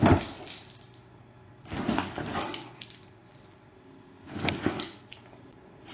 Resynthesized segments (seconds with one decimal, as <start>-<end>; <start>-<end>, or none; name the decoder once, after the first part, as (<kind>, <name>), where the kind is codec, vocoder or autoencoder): none